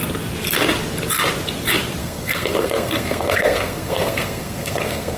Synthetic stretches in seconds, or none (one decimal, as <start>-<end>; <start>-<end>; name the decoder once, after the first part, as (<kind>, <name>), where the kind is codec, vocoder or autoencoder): 2.0-5.2 (codec, SNAC)